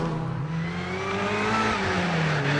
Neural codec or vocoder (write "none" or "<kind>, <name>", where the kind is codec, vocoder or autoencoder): none